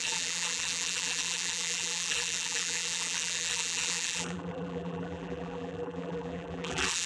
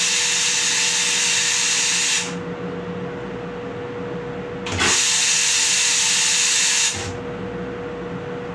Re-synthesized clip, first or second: first